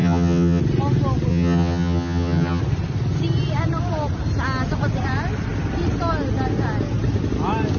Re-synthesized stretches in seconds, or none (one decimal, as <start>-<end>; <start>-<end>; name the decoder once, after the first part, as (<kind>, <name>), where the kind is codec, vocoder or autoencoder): 0.0-0.6 (vocoder, HiFi-GAN); 1.3-2.6